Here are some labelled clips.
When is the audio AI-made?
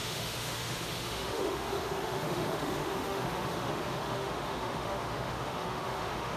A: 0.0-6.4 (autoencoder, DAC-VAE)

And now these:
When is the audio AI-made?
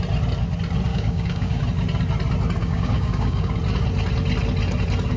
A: 0.9-1.6 (codec, DAC); 2.6-3.5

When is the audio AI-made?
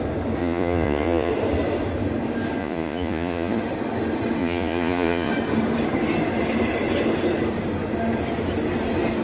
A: 0.4-1.3 (vocoder, Vocos); 2.6-3.6; 4.4-5.3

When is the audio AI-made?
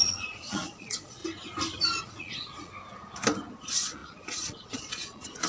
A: 0.0-1.2 (vocoder, Vocos); 2.0-2.7; 3.6-5.5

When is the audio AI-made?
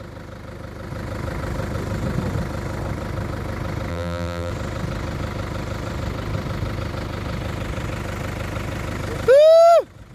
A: 3.9-4.5 (vocoder, BigVGAN v2)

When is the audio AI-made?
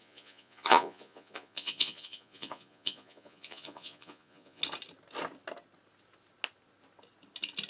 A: 0.0-4.6 (vocoder, Vocos)